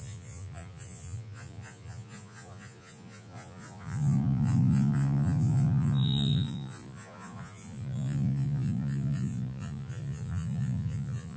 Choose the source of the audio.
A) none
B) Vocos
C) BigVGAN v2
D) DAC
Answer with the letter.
B